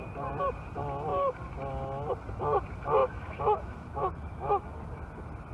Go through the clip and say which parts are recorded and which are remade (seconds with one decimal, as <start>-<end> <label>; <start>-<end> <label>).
0.0-3.0 recorded; 3.0-4.8 remade; 4.8-5.5 recorded